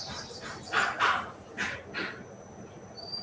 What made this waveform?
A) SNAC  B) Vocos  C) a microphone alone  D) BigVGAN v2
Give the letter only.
D